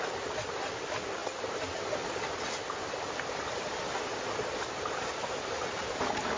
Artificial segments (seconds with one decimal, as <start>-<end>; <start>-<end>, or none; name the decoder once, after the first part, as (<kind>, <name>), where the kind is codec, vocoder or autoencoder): 1.2-1.8 (vocoder, BigVGAN v2); 2.6-6.0